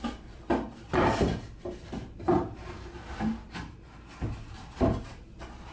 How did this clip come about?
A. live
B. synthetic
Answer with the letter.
B